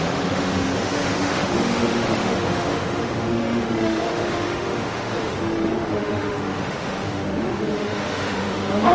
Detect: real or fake fake